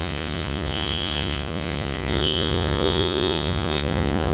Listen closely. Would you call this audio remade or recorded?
remade